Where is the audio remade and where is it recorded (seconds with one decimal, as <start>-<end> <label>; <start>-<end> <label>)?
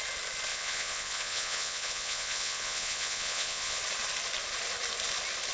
0.0-0.5 recorded; 0.5-3.8 remade; 3.8-5.5 recorded